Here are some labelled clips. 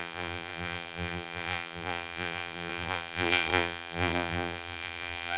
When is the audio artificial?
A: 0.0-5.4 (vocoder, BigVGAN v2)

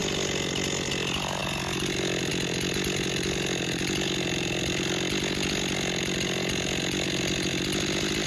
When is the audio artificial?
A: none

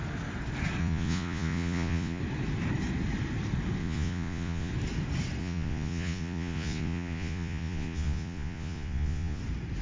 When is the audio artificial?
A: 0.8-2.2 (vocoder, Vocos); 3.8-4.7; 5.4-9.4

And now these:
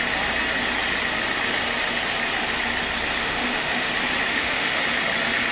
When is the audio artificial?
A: 3.2-3.9 (autoencoder, DAC-VAE); 4.3-4.8

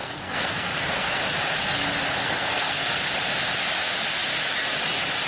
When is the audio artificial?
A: 0.0-1.2 (codec, SNAC); 2.2-3.0

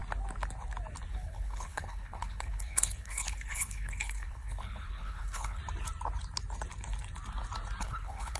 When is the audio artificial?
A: 1.1-5.6 (codec, HILCodec); 7.8-8.4

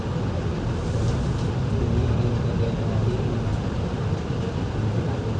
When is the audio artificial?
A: 3.5-4.2 (vocoder, BigVGAN v2)